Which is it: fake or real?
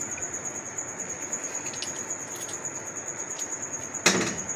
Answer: real